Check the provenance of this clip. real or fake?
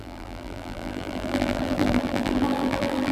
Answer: fake